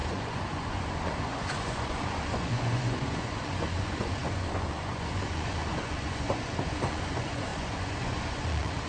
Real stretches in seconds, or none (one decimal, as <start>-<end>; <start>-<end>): none